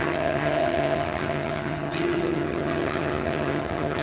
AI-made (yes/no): yes